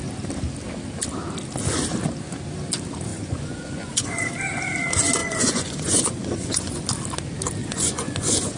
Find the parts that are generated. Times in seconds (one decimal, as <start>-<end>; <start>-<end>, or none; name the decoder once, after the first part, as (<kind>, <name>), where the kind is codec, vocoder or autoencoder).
3.1-4.3 (vocoder, Vocos); 5.2-6.8; 7.6-8.6